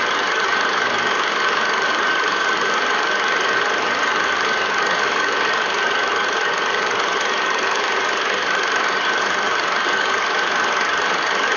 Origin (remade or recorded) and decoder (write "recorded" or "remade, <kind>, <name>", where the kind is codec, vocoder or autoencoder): remade, codec, DAC